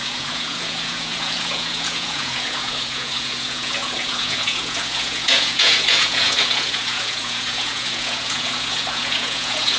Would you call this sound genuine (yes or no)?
no